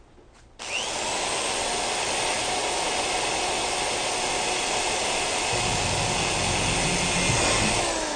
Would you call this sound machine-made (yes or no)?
no